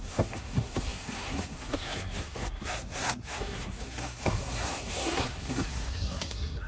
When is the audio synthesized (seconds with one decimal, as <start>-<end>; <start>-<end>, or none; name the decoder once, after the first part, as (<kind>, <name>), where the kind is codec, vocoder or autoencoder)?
0.0-6.7 (codec, SNAC)